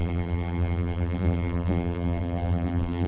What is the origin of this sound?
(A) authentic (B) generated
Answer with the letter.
B